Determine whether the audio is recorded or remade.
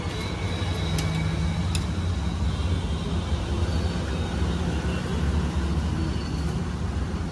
recorded